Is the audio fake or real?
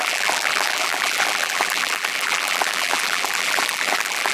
fake